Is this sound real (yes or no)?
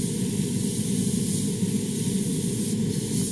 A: yes